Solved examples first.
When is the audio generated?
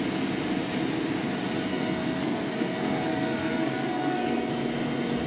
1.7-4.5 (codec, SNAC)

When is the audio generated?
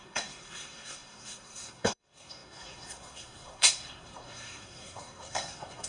0.0-5.9 (codec, SNAC)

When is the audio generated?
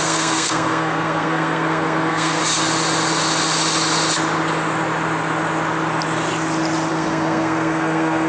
0.0-2.4 (codec, SNAC); 6.9-8.3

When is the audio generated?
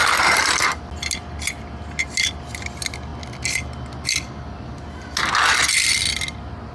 none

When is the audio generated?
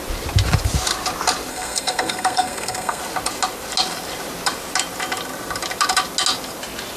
1.5-3.0 (codec, SNAC)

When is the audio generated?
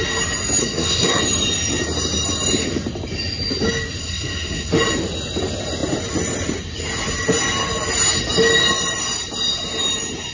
0.6-1.2 (codec, SNAC); 4.0-4.7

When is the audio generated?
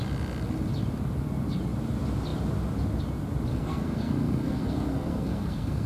3.5-5.9 (codec, SNAC)